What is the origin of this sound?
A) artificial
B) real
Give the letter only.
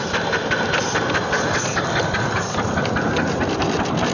B